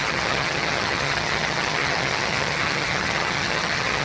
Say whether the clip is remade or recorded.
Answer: remade